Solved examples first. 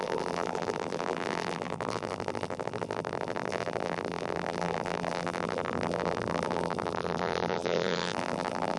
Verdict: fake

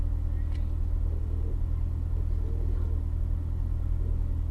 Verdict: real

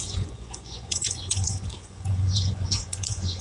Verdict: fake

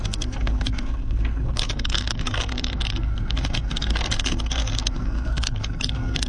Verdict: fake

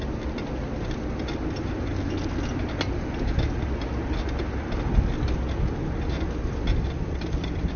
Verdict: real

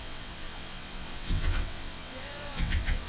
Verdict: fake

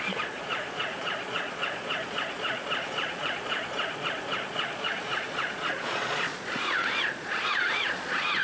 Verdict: fake